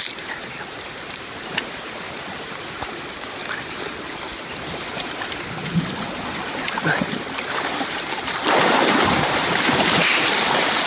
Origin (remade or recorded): recorded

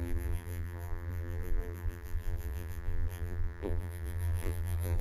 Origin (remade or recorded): remade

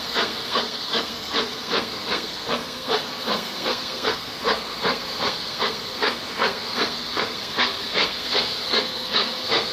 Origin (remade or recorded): remade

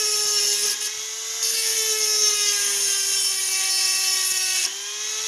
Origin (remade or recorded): recorded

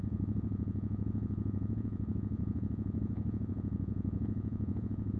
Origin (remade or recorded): remade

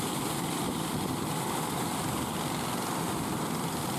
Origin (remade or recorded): recorded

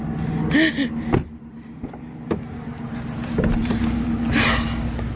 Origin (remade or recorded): recorded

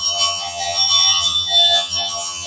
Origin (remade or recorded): remade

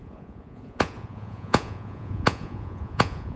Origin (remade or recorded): remade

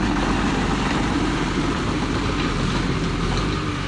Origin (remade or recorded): remade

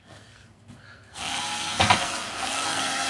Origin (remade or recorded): remade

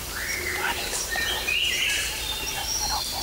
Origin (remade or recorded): remade